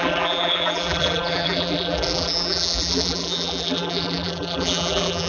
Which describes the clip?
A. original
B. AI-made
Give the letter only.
B